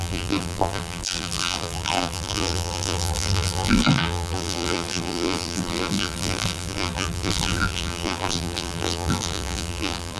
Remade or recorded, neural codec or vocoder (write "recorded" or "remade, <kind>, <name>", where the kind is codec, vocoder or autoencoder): remade, vocoder, BigVGAN v2